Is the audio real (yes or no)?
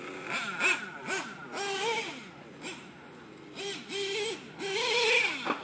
yes